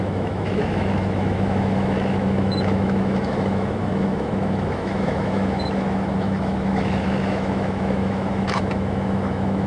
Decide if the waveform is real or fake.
fake